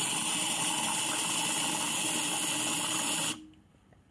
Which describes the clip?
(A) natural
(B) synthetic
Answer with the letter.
A